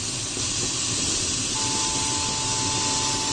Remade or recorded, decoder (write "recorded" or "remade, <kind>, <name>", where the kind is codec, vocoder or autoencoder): recorded